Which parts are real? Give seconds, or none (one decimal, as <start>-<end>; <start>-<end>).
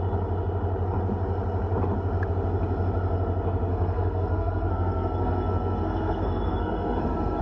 0.0-3.7